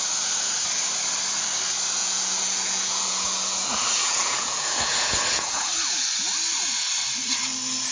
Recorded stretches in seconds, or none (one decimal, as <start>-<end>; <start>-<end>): 0.0-2.0; 5.6-7.9